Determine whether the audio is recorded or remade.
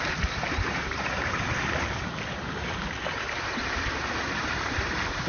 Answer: remade